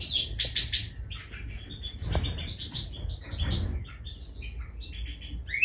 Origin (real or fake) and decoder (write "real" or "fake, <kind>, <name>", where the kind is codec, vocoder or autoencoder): real